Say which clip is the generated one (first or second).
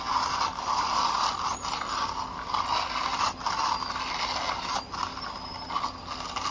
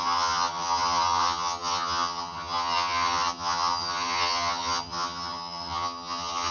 second